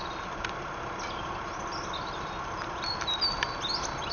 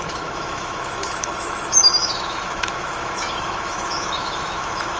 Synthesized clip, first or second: second